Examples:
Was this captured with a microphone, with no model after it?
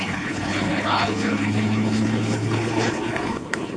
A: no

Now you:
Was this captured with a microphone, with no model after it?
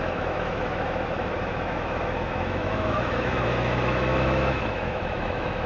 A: no